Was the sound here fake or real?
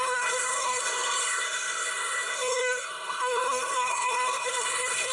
fake